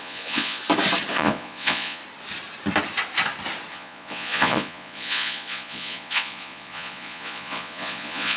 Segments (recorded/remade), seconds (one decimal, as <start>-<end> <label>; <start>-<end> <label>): 0.0-0.6 remade; 0.6-1.1 recorded; 1.1-2.0 remade; 2.0-3.7 recorded; 3.7-8.4 remade